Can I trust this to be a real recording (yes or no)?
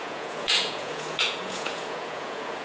no